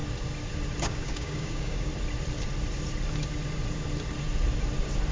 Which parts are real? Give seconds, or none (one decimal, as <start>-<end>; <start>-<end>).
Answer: 0.0-0.8; 1.9-5.1